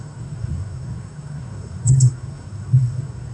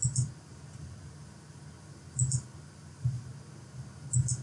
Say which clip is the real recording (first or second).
second